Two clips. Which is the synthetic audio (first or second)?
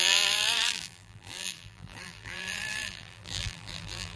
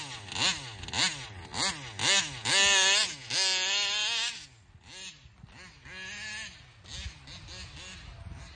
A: first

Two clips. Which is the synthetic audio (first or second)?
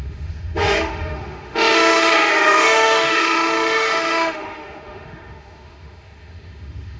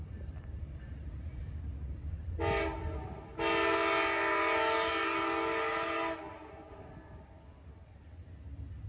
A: first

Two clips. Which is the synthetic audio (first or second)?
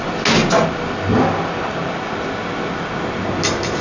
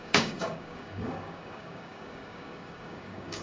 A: second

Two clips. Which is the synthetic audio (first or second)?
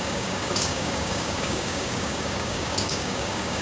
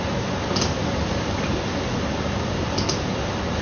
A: first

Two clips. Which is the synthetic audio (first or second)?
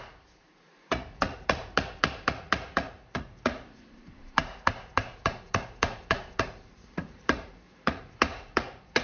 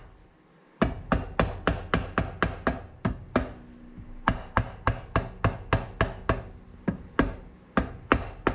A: first